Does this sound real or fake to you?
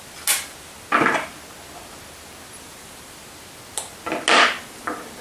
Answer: real